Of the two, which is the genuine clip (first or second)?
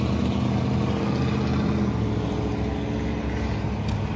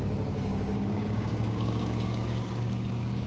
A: first